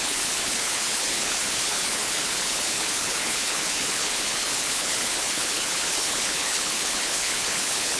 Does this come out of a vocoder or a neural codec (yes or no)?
yes